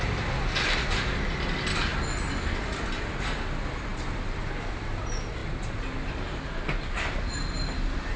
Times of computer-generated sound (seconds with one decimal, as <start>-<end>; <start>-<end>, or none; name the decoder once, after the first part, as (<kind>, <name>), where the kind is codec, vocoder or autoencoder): none